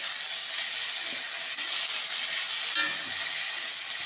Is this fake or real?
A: real